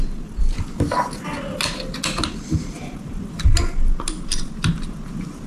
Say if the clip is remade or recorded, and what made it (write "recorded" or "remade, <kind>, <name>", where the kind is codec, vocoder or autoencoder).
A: recorded